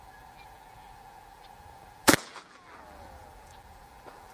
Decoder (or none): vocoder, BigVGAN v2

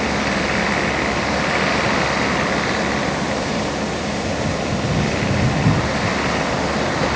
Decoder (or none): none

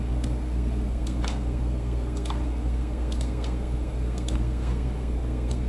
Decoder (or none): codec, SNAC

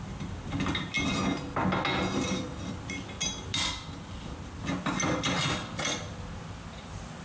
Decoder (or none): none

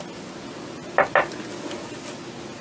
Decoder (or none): none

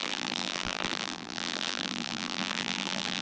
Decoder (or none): vocoder, BigVGAN v2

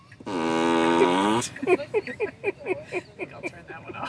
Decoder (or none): none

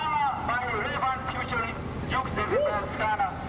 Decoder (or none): vocoder, BigVGAN v2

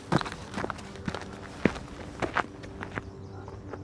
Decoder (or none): none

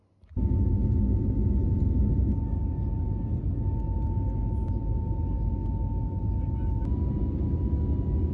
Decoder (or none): none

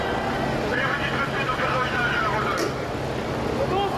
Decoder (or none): none